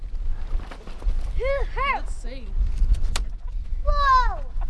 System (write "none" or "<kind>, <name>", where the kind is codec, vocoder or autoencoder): none